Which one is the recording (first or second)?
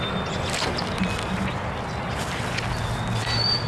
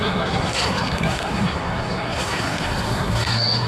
first